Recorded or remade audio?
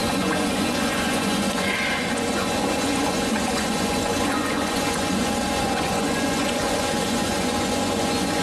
remade